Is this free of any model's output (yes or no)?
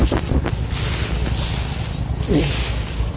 yes